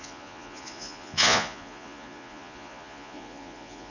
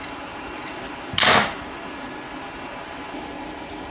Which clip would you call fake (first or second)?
first